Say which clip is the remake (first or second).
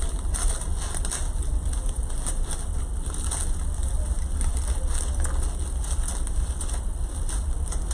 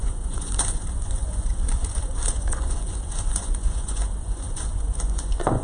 second